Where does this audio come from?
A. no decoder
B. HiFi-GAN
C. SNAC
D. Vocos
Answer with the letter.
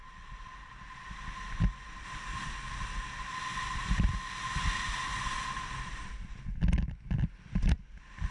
A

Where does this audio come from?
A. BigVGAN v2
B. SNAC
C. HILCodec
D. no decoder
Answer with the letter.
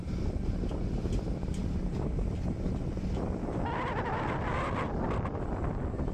D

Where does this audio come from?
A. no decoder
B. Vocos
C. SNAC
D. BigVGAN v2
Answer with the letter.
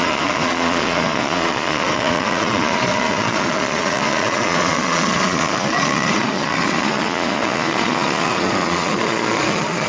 B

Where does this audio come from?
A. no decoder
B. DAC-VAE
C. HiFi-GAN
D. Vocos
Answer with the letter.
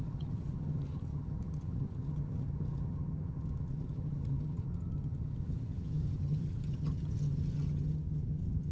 C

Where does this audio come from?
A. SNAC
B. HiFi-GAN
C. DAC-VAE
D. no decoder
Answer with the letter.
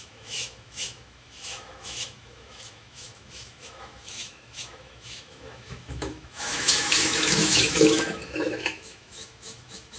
C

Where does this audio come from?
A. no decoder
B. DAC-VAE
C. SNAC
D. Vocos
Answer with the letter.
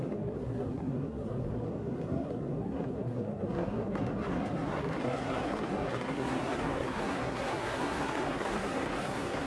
C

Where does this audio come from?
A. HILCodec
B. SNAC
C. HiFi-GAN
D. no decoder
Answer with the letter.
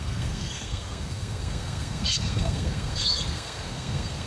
B